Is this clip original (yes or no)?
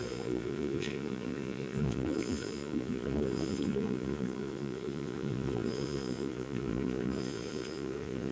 no